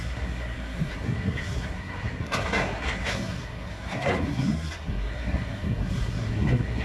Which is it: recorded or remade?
remade